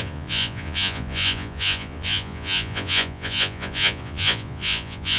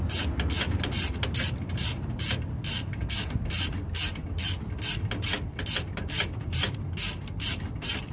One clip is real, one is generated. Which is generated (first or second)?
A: first